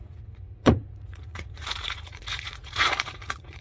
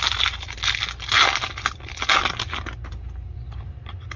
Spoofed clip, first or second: first